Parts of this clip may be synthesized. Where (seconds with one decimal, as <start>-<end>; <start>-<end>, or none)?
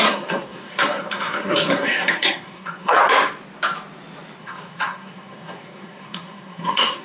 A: 0.0-3.0; 4.4-7.0